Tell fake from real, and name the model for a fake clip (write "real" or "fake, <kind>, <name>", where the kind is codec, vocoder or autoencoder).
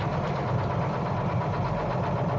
real